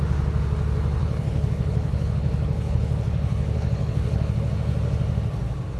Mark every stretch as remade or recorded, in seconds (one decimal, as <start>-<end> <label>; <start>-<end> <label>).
0.0-1.0 recorded; 1.0-4.5 remade; 4.5-5.8 recorded